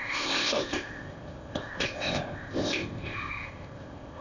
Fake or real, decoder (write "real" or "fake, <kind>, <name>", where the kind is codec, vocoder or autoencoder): fake, codec, ZipCodec